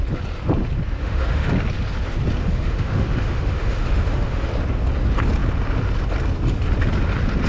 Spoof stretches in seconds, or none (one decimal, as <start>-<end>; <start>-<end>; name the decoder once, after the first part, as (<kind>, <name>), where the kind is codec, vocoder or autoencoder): 1.0-1.5 (autoencoder, DAC-VAE); 2.4-4.5